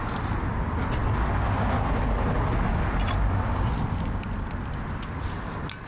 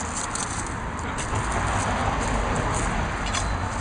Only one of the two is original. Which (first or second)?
first